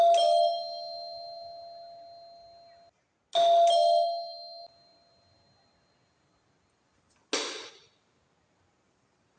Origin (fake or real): real